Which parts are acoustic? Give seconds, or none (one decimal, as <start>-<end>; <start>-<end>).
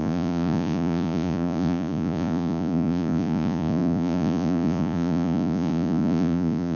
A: none